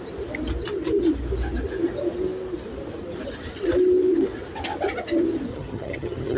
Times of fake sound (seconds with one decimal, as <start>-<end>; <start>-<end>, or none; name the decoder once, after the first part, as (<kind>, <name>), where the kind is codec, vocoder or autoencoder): 5.5-6.4 (vocoder, HiFi-GAN)